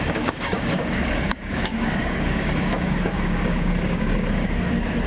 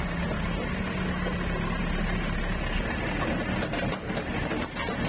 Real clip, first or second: second